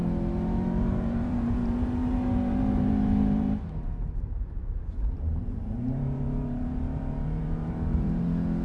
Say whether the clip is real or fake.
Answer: fake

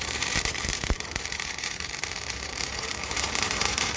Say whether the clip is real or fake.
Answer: fake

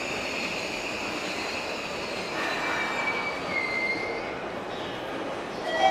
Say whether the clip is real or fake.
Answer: real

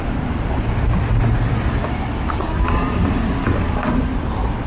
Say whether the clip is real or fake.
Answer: fake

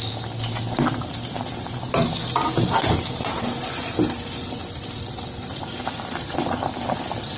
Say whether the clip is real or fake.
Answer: fake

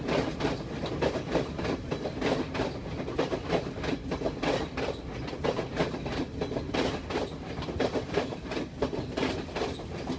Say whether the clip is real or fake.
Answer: fake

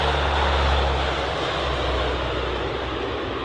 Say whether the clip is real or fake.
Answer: real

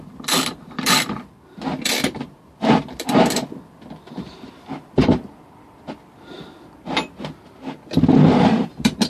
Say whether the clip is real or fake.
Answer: fake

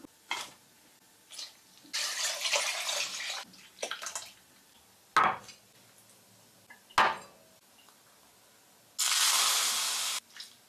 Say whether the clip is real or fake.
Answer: real